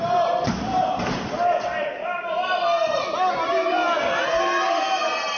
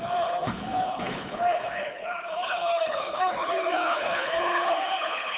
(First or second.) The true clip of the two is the first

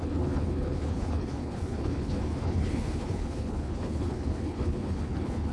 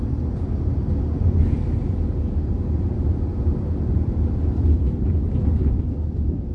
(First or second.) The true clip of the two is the second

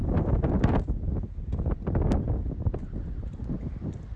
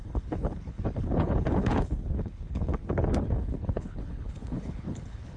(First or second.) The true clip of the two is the first